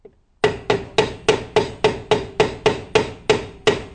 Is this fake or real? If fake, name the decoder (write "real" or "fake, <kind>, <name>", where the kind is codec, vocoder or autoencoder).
real